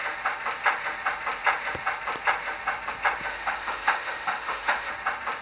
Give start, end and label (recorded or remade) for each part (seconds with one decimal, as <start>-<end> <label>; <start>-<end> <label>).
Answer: 0.0-3.3 recorded; 3.3-4.9 remade; 4.9-5.4 recorded